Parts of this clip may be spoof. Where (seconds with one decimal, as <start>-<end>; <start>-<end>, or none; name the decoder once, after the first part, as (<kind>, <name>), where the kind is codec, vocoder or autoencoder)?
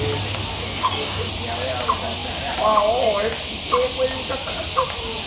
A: 0.5-1.3 (codec, DAC)